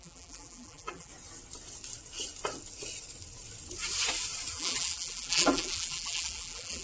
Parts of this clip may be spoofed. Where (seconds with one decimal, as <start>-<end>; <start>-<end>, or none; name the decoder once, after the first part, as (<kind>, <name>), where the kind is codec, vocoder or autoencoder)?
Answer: 0.0-1.1 (vocoder, BigVGAN v2); 4.5-6.8